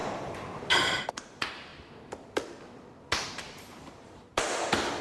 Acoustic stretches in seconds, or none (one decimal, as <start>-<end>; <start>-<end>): 1.7-3.3

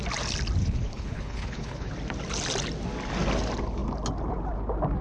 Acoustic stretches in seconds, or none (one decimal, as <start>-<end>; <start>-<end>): 0.0-0.6; 1.9-5.0

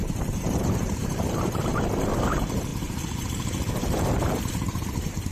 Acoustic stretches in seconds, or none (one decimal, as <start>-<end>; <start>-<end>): none